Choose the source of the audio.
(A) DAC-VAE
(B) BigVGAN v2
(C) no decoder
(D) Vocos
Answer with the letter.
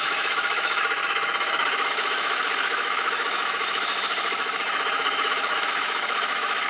A